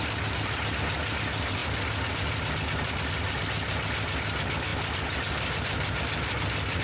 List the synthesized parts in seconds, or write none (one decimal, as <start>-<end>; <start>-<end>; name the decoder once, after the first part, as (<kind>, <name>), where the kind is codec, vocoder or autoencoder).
none